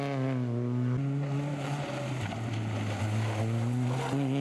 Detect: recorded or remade recorded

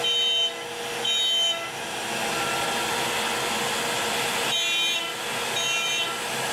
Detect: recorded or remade recorded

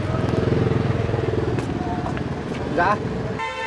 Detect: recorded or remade recorded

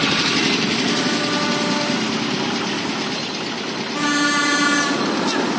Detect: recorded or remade recorded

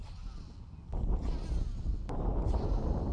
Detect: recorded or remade recorded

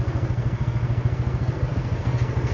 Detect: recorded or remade remade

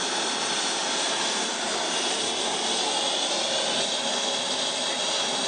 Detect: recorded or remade recorded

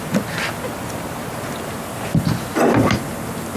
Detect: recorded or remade recorded